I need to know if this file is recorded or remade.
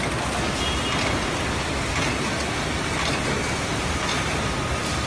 recorded